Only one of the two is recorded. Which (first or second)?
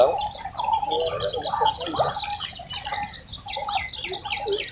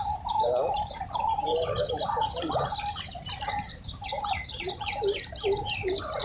first